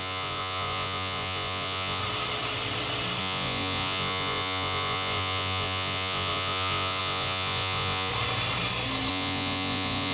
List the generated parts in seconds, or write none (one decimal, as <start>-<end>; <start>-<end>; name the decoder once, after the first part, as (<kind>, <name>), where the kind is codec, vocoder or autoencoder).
0.0-2.0 (vocoder, Vocos); 3.2-8.1; 9.1-10.1